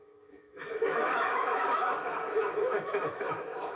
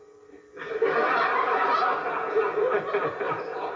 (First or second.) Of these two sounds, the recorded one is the second